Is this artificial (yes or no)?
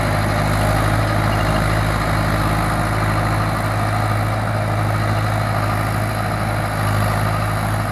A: no